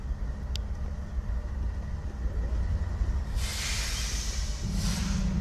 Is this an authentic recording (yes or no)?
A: yes